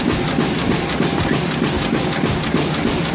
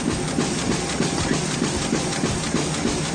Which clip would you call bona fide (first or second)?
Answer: second